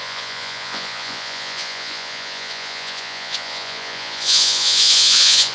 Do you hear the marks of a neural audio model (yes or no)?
yes